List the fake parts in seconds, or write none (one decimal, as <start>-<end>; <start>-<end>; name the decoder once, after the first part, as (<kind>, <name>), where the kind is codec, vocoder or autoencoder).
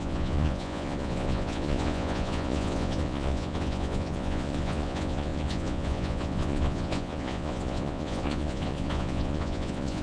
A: 0.0-10.0 (vocoder, Vocos)